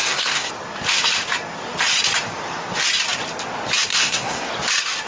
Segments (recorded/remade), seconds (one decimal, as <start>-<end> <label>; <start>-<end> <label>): 0.0-0.5 remade; 0.5-3.9 recorded; 3.9-4.5 remade; 4.5-5.1 recorded